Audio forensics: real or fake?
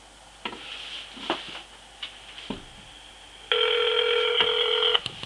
real